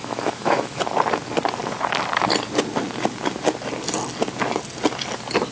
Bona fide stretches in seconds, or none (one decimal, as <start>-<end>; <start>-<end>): 0.8-5.5